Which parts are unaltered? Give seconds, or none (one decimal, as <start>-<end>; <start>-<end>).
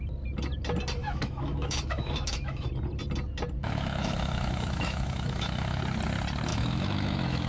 0.0-1.0; 2.7-3.6; 5.8-6.5